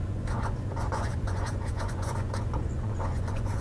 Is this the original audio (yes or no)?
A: no